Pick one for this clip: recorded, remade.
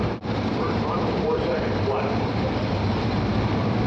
remade